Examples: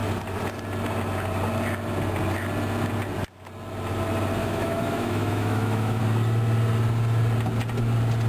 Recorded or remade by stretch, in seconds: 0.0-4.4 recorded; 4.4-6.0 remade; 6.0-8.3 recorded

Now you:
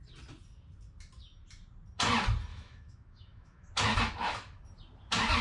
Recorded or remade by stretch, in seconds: 0.0-2.5 recorded; 2.5-3.7 remade; 3.7-5.4 recorded

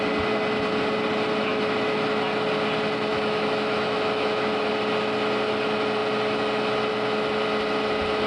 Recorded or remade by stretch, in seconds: 0.0-1.5 recorded; 1.5-2.0 remade; 2.0-3.1 recorded; 3.1-4.7 remade; 4.7-8.3 recorded

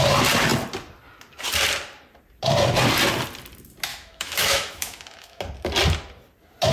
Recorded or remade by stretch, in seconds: 0.0-3.9 recorded; 3.9-5.4 remade; 5.4-6.7 recorded

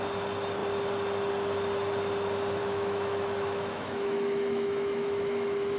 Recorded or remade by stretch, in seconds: 0.0-2.6 recorded; 2.6-5.8 remade

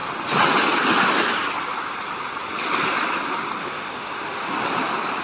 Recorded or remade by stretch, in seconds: 0.0-3.6 recorded; 3.6-4.5 remade; 4.5-5.2 recorded